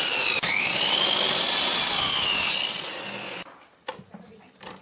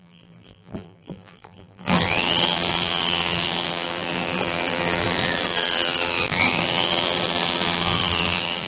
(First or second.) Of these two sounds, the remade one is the second